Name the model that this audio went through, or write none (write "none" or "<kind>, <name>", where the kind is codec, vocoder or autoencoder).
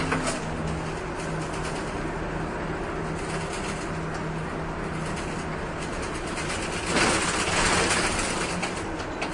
none